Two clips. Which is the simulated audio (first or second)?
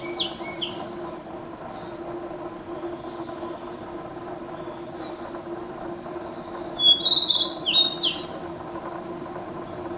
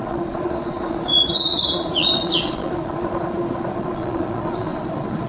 second